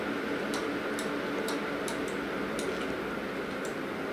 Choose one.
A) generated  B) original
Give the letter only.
B